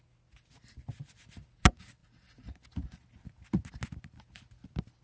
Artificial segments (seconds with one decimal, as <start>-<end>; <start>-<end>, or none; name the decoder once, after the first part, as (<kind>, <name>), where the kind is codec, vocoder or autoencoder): none